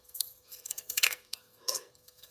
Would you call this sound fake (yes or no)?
yes